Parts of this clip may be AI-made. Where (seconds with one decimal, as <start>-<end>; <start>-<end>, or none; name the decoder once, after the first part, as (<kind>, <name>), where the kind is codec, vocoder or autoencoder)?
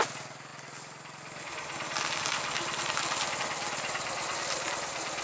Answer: none